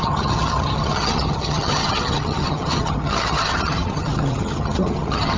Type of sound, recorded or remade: remade